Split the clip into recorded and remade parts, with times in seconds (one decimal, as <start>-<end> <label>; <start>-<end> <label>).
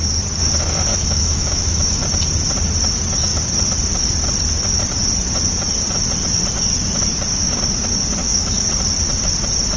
0.0-0.9 recorded; 0.9-2.0 remade; 2.0-8.2 recorded; 8.2-8.7 remade; 8.7-9.8 recorded